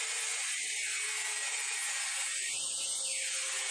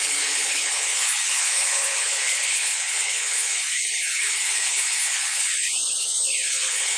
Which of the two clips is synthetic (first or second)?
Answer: second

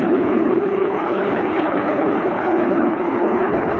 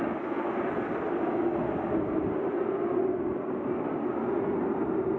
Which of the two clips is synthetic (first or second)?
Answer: first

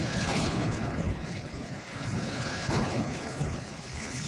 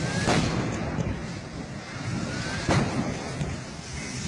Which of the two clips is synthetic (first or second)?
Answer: first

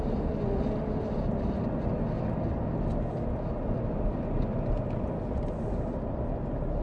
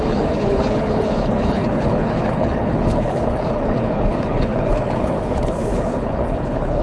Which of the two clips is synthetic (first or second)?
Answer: second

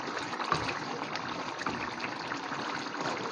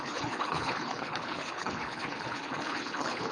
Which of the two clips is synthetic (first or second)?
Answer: second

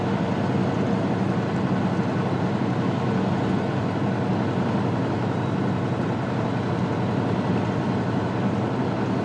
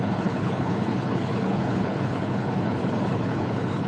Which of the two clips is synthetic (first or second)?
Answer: second